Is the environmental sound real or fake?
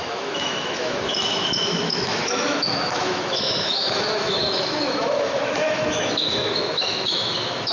fake